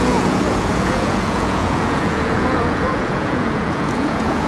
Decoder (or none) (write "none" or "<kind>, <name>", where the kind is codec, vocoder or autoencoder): vocoder, Vocos